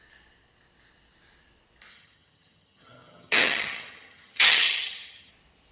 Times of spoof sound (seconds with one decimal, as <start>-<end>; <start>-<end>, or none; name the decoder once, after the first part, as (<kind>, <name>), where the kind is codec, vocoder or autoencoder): 1.9-5.3 (vocoder, HiFi-GAN)